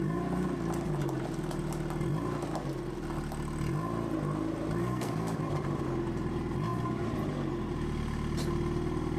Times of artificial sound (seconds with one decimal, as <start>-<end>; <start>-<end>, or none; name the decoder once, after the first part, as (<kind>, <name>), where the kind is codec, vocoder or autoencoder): 4.8-5.4 (codec, SNAC)